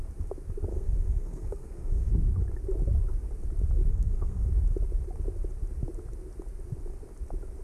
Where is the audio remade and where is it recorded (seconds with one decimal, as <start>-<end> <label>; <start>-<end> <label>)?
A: 0.0-0.7 recorded; 0.7-2.1 remade; 2.1-3.9 recorded; 3.9-4.5 remade; 4.5-7.6 recorded